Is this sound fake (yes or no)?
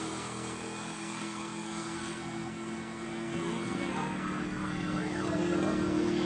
yes